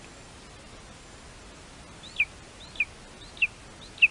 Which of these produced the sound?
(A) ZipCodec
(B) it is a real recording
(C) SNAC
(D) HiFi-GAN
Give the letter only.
B